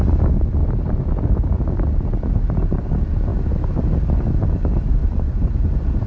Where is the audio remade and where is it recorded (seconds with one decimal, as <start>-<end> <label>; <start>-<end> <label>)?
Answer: 0.0-0.6 recorded; 0.6-2.9 remade; 2.9-5.0 recorded; 5.0-6.1 remade